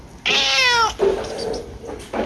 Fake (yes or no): no